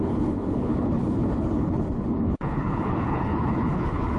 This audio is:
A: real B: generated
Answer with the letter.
B